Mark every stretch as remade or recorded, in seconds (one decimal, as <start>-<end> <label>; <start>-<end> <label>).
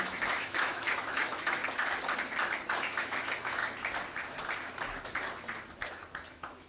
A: 0.0-1.6 remade; 1.6-2.8 recorded; 2.8-3.6 remade; 3.6-6.3 recorded; 6.3-6.7 remade